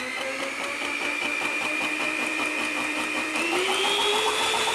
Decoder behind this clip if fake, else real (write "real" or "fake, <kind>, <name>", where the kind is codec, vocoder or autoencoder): fake, vocoder, BigVGAN v2